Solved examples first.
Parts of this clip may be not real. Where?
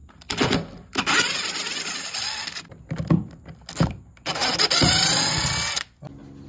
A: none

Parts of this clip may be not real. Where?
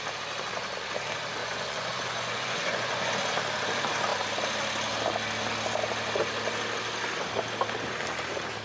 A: 1.4-3.1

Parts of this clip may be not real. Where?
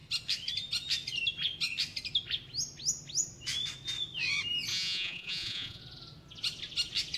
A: 4.7-5.8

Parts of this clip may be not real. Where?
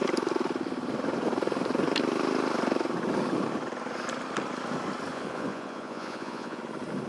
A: 5.1-6.6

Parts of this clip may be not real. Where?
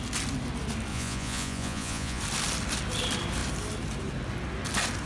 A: 0.9-2.2